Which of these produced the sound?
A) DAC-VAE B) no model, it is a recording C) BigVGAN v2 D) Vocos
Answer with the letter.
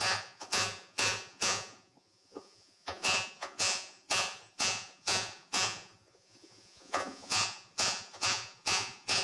D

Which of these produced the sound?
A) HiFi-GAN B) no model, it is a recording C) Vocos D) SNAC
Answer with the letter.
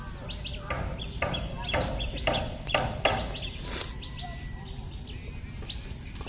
B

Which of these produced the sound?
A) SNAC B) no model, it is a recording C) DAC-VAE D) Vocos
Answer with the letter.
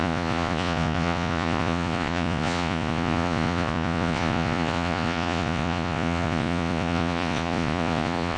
D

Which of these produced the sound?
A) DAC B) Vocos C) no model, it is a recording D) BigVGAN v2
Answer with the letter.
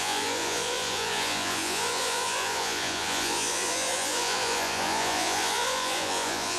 B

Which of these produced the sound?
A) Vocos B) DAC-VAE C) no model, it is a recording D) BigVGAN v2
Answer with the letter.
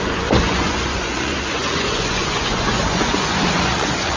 A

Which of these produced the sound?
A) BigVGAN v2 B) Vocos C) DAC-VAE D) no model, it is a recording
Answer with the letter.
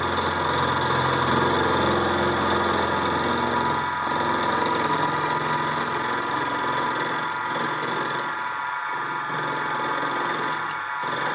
D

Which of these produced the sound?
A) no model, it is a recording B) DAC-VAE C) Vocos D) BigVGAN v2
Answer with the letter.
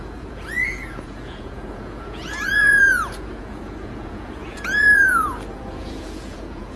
C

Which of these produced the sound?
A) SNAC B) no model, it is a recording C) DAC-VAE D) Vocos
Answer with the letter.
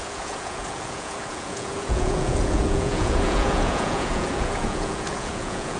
D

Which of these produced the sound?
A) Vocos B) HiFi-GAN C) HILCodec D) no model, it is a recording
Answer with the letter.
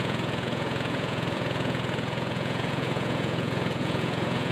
A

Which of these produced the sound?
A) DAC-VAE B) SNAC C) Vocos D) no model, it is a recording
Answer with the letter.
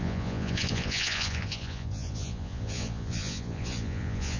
C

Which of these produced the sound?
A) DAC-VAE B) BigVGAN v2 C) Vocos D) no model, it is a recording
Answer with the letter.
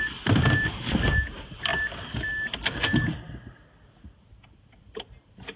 D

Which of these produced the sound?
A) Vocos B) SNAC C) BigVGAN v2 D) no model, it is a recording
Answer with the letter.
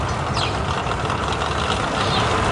D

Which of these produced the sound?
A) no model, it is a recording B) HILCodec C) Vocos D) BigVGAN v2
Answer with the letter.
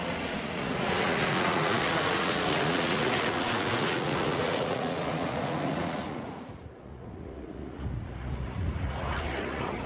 C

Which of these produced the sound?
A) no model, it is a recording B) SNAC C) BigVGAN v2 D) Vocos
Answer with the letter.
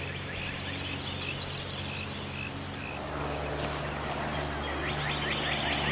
A